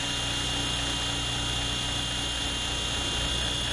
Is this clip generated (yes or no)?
no